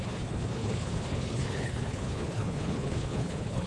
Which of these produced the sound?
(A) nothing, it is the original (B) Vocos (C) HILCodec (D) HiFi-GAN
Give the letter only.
C